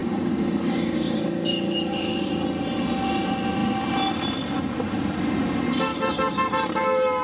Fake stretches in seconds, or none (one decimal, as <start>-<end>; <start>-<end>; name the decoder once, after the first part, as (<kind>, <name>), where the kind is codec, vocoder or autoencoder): 0.0-2.3 (codec, DAC); 5.9-6.5